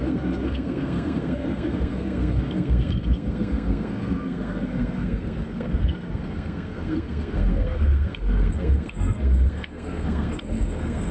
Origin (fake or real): fake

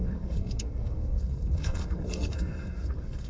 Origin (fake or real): fake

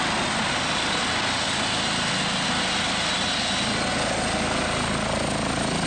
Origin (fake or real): real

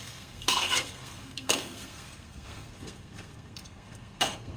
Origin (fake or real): fake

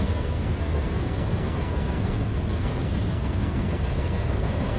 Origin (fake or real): fake